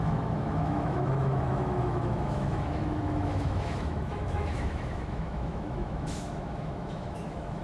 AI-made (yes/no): yes